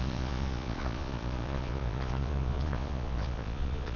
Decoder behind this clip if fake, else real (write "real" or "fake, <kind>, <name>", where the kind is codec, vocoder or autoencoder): fake, vocoder, Vocos